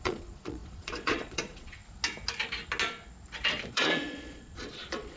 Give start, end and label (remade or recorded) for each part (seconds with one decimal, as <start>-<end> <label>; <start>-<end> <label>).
0.0-1.8 remade; 1.8-3.7 recorded; 3.7-5.2 remade